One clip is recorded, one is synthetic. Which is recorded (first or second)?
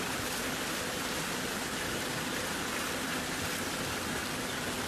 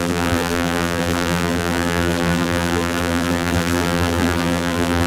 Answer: first